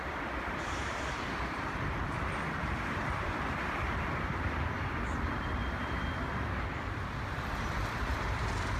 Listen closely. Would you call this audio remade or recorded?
remade